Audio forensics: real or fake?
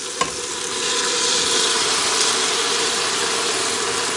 real